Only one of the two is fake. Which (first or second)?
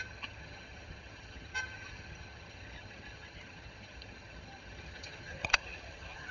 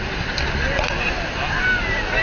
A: first